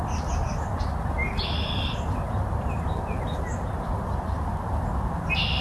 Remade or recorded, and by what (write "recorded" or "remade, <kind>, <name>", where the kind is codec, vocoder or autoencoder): recorded